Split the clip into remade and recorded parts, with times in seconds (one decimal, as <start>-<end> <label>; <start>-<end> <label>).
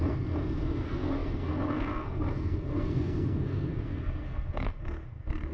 0.0-5.5 remade